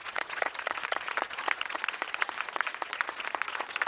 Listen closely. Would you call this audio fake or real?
fake